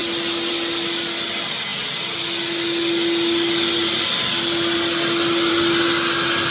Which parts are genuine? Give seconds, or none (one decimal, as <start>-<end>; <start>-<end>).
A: 0.0-6.5